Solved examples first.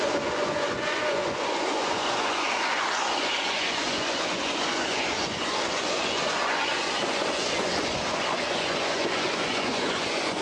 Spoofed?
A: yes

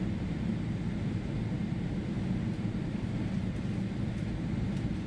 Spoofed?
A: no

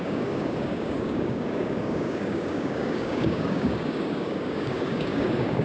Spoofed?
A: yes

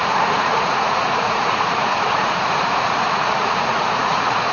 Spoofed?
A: yes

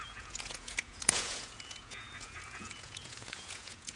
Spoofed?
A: yes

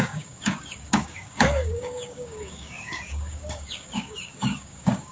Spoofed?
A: yes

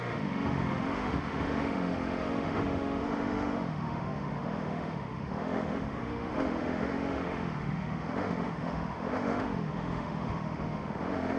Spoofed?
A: yes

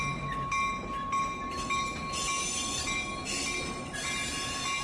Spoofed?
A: no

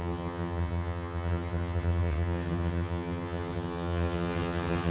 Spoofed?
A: yes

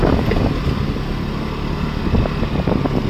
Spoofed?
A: no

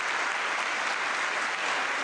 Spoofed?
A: no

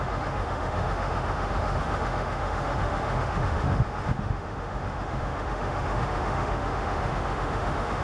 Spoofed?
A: yes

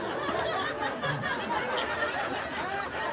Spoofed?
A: no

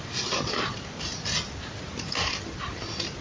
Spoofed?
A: no